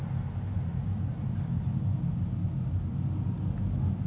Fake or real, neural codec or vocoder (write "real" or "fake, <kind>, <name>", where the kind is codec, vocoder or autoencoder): real